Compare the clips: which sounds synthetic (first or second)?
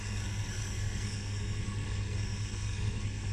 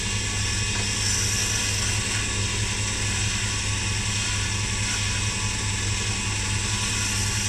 first